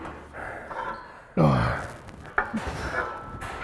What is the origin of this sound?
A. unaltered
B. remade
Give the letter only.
A